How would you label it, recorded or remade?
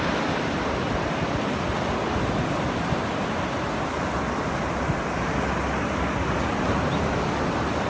recorded